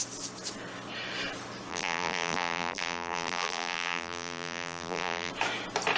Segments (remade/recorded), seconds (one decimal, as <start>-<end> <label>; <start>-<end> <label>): 0.0-1.7 recorded; 1.7-5.3 remade; 5.3-6.0 recorded